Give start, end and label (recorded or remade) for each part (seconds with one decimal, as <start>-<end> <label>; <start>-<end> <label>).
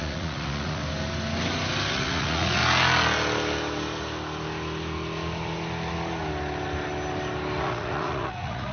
0.0-0.8 remade; 0.8-1.9 recorded; 1.9-2.6 remade; 2.6-7.6 recorded; 7.6-8.7 remade